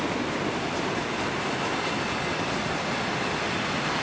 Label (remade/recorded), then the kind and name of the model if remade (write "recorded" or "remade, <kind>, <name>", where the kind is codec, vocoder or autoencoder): recorded